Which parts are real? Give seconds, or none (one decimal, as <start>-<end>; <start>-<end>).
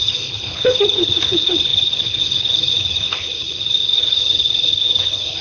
none